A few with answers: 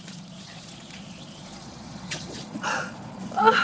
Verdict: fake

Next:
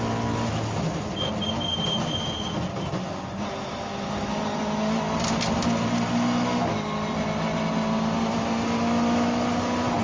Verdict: real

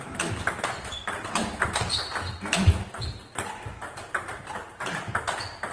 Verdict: real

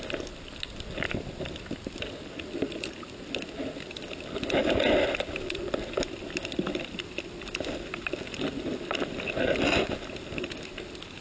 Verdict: real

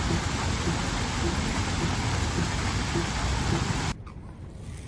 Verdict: real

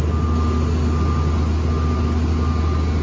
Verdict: real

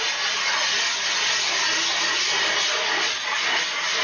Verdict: real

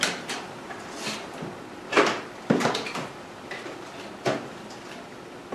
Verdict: fake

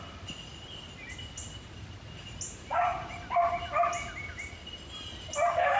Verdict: real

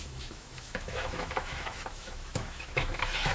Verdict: fake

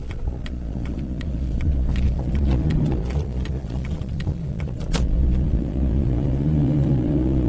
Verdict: fake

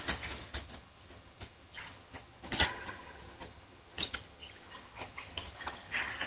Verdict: fake